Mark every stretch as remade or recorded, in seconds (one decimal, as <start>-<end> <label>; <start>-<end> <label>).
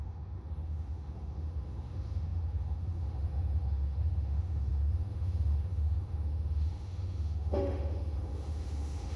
0.0-9.2 remade